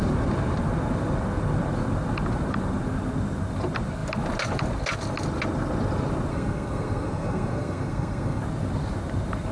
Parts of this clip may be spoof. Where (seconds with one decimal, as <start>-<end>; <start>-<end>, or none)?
6.3-8.4